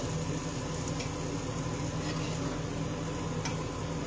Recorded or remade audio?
recorded